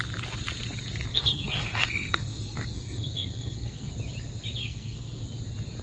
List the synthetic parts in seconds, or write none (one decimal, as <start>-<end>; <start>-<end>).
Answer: 1.1-3.9; 4.6-5.2

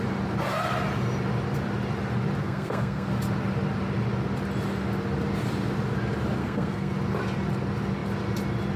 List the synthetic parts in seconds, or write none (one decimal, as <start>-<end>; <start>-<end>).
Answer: 2.4-3.1; 6.4-6.9

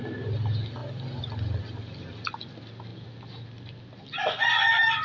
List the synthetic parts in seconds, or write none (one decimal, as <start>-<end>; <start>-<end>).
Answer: none

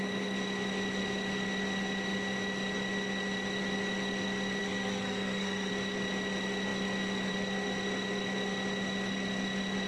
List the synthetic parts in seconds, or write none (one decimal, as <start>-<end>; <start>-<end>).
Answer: 4.6-5.7

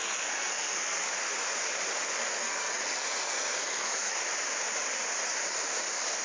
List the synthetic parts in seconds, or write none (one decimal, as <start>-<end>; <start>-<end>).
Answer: 0.0-1.1; 2.2-4.2